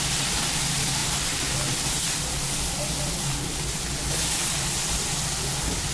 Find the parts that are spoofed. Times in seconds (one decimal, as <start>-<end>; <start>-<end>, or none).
none